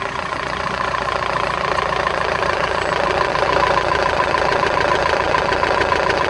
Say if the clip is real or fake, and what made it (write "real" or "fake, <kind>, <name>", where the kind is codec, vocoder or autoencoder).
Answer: fake, vocoder, Vocos